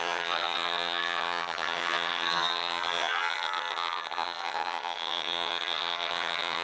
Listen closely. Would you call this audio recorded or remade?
remade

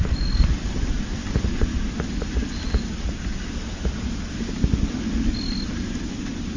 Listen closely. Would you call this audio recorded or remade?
recorded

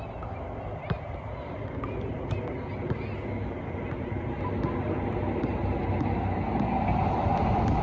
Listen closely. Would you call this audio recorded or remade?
recorded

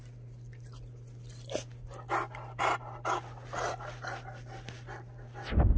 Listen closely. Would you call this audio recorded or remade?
recorded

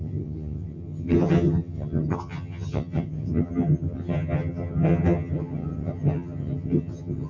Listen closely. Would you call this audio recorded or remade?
remade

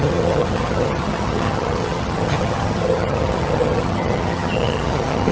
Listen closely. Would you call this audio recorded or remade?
remade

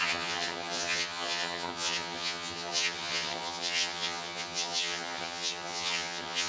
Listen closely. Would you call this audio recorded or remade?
remade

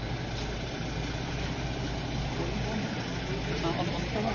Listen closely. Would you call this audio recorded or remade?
recorded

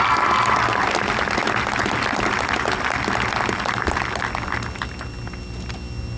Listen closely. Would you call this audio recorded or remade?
recorded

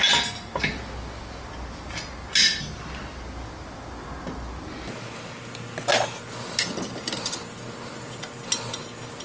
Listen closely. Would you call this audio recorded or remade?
recorded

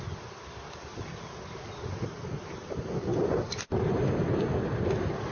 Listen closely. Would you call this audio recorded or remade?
recorded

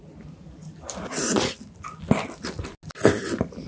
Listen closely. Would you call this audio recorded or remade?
recorded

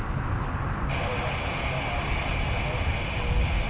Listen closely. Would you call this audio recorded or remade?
recorded